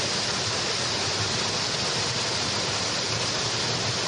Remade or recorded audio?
recorded